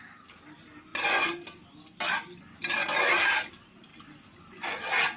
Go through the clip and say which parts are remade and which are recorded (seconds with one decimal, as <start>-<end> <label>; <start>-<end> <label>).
0.0-5.2 recorded